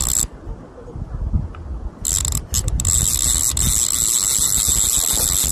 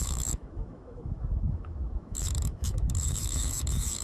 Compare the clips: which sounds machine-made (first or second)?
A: second